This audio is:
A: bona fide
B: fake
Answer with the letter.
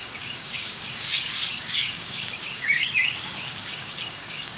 B